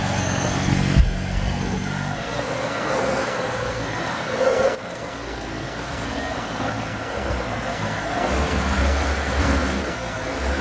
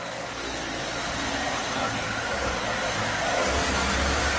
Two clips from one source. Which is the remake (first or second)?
first